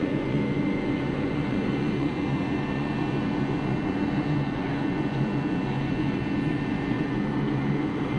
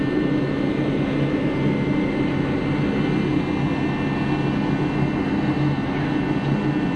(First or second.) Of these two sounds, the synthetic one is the first